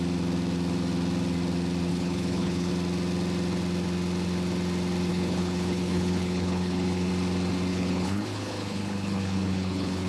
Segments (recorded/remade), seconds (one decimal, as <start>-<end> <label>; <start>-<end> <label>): 0.0-1.9 recorded; 1.9-2.7 remade; 2.7-5.1 recorded; 5.1-7.1 remade; 7.1-7.7 recorded; 7.7-10.1 remade